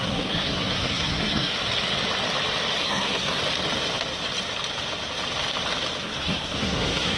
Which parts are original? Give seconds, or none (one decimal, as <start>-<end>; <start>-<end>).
1.5-2.8; 3.4-6.0